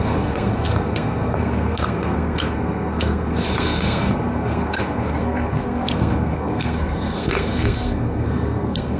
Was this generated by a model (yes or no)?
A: yes